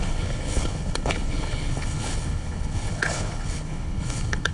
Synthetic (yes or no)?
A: yes